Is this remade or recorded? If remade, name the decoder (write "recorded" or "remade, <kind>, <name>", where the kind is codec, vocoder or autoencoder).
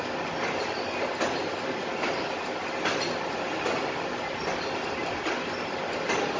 recorded